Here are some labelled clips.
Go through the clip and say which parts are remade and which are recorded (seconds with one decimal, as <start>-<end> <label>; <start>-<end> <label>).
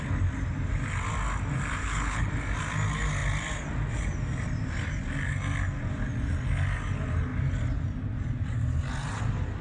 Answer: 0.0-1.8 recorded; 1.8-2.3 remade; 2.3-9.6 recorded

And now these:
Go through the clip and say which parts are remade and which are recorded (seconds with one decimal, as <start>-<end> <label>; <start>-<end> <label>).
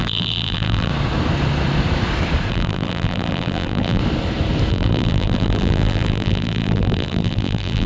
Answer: 0.0-0.9 remade; 0.9-2.5 recorded; 2.5-4.0 remade; 4.0-4.7 recorded; 4.7-7.9 remade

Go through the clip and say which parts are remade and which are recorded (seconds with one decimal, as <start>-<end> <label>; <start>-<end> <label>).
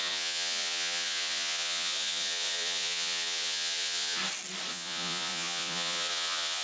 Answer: 0.0-4.2 remade; 4.2-4.7 recorded; 4.7-6.6 remade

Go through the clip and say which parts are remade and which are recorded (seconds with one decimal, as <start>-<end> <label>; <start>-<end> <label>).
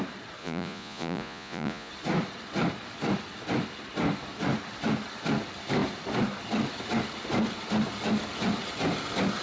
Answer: 0.0-0.4 recorded; 0.4-1.9 remade; 1.9-9.4 recorded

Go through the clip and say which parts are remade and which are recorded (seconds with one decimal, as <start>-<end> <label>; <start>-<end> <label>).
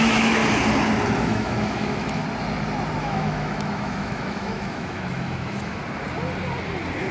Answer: 0.0-0.4 remade; 0.4-1.2 recorded; 1.2-2.2 remade; 2.2-3.0 recorded; 3.0-5.8 remade; 5.8-7.1 recorded